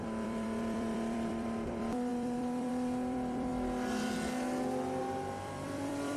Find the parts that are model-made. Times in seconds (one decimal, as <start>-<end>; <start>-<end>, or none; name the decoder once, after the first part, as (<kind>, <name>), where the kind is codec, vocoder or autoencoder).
0.0-3.5 (vocoder, BigVGAN v2); 5.0-6.2